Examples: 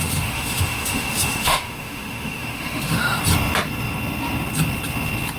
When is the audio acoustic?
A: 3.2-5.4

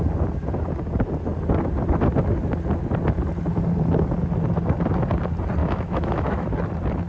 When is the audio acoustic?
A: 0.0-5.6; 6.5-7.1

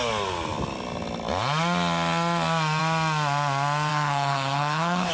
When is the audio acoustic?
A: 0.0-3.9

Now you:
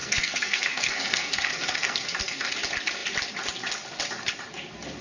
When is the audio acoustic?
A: 2.5-5.0

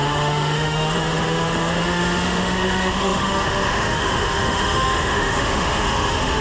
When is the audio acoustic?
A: none

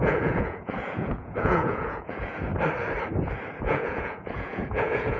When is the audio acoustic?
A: 2.5-3.6

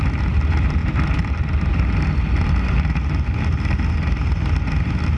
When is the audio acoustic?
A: 0.0-5.2

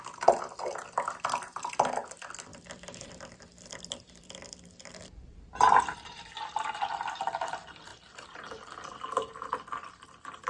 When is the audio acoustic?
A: 0.0-2.5; 6.2-10.5